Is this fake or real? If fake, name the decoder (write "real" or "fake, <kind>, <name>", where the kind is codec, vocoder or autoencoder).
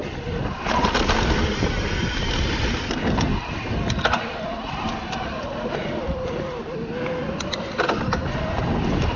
real